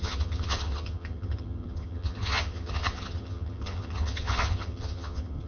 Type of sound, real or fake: fake